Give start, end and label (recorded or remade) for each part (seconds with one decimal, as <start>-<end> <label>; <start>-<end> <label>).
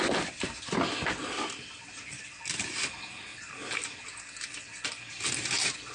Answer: 0.0-5.9 recorded